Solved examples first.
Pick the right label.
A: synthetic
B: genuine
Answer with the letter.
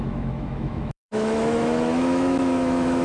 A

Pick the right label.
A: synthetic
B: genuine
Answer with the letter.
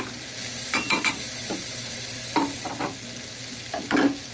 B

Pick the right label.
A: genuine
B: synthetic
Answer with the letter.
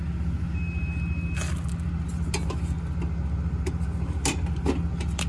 A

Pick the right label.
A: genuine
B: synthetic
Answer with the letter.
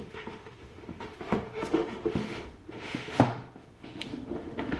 B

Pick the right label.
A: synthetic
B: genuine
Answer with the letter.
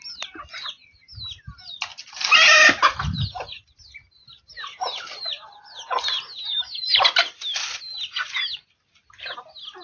B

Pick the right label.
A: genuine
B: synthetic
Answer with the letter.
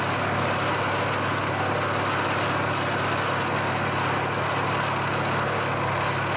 A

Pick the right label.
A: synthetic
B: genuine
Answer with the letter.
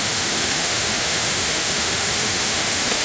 A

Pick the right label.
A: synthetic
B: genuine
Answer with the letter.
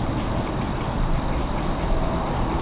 B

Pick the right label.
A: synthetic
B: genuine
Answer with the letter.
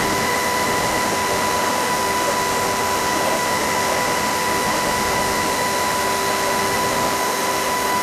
A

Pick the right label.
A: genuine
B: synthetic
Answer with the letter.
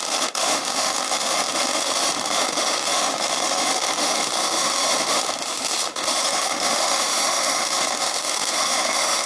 B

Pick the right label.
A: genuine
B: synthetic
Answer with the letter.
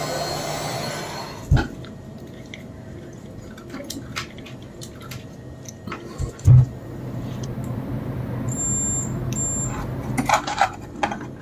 A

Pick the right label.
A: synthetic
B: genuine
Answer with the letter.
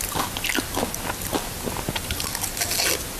B